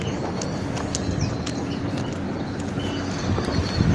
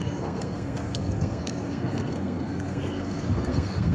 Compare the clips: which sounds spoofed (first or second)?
second